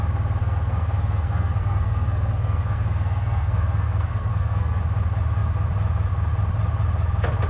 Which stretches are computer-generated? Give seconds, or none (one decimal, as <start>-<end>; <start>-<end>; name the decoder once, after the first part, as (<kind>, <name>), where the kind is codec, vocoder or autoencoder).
0.4-4.8 (codec, SNAC)